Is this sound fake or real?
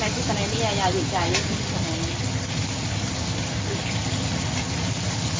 real